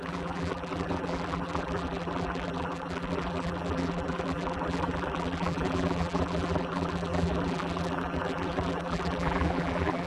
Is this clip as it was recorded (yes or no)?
no